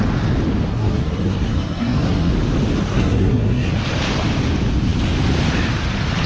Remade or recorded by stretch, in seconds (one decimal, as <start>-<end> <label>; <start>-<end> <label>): 0.0-0.7 recorded; 0.7-2.3 remade; 2.3-2.9 recorded; 2.9-3.7 remade; 3.7-6.3 recorded